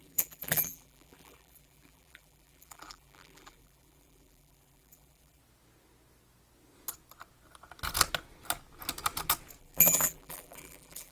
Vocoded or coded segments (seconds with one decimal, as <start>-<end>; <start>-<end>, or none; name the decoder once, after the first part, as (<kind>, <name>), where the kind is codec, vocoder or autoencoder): 0.0-5.4 (vocoder, BigVGAN v2); 9.6-11.1